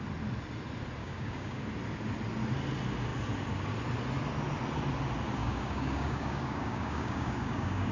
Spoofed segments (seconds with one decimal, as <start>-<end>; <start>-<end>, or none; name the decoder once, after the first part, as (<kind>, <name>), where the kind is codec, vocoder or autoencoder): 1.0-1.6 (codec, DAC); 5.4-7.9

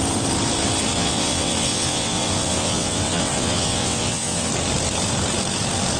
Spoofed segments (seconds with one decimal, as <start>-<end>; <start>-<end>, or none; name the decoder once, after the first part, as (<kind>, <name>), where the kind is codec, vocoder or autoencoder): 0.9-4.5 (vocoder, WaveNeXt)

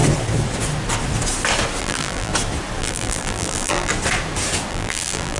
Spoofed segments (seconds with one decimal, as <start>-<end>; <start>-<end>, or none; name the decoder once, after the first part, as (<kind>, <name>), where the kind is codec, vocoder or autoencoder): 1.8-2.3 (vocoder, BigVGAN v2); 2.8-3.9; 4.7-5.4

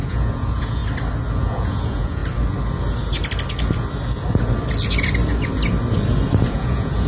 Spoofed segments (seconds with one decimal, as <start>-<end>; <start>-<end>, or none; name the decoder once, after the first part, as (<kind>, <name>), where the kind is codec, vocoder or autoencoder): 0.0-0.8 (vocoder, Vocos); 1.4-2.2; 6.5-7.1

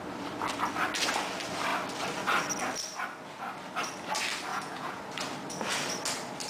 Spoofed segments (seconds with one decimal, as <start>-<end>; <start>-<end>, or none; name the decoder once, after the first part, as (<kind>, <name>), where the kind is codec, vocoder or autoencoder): 4.5-5.0 (vocoder, Vocos)